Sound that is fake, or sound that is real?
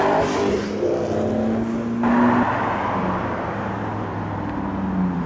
real